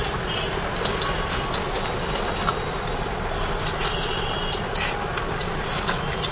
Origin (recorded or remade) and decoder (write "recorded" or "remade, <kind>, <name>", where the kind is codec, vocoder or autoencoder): recorded